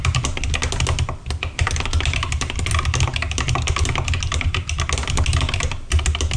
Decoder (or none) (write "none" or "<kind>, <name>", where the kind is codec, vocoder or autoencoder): none